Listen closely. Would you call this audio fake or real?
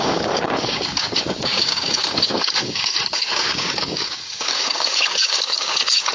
fake